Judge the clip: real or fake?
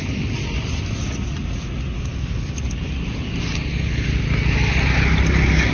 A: real